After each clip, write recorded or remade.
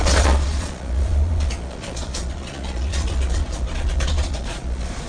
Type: remade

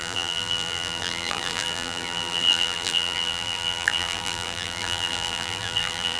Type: remade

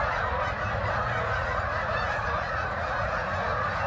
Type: remade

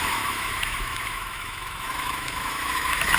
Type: remade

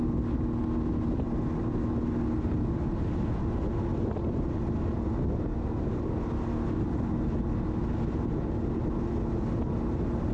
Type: recorded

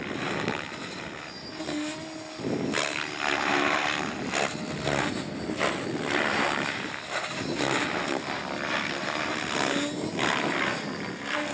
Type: recorded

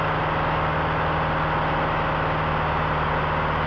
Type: recorded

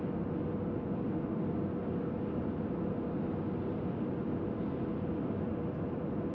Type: recorded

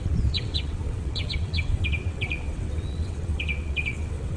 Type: remade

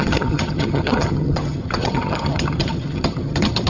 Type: remade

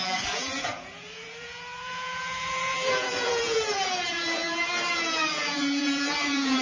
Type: remade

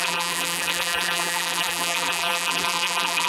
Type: remade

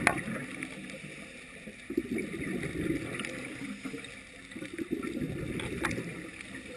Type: recorded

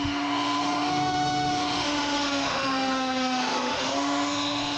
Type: remade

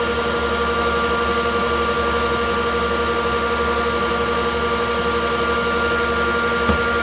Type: recorded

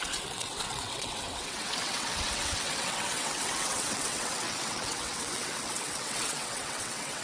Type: remade